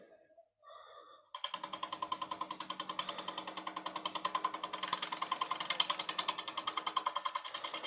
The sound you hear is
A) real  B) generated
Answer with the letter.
A